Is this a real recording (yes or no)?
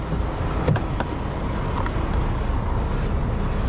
yes